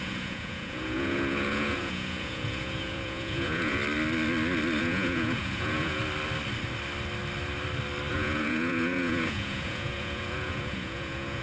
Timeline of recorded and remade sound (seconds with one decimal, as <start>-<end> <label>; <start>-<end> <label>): 0.0-3.8 remade; 3.8-4.8 recorded; 4.8-6.0 remade; 6.0-8.1 recorded; 8.1-11.4 remade